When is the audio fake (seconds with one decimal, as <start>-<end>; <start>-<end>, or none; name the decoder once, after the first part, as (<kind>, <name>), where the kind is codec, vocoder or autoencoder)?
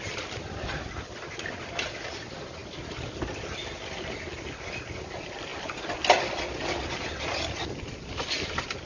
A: none